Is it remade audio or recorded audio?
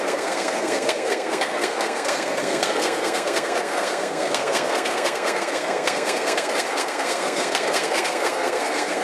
remade